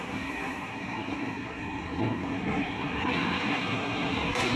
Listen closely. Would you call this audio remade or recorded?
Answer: remade